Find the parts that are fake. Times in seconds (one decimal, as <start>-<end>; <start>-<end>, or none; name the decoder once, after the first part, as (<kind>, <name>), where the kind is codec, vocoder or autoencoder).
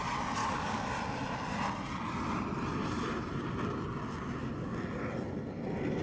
0.4-0.9 (codec, DAC)